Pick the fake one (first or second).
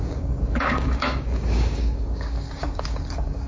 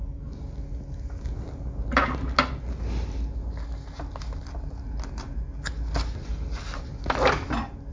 first